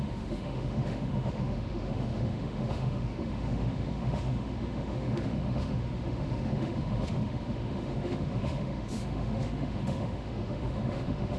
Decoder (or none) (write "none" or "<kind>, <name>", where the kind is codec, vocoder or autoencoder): autoencoder, DAC-VAE